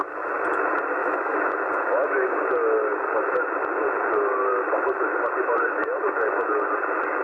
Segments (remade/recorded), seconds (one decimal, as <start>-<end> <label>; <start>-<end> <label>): 0.0-1.0 recorded; 1.0-2.3 remade; 2.3-7.2 recorded